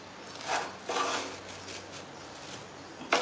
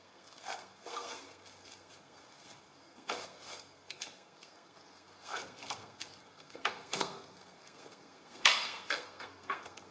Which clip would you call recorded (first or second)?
first